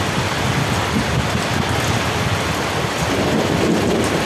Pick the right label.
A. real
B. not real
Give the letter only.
A